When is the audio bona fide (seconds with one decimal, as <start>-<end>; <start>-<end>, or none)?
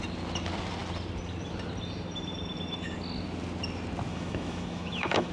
0.0-4.1